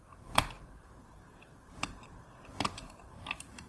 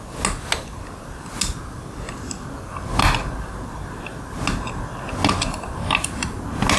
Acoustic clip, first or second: second